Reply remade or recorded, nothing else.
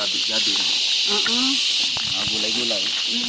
recorded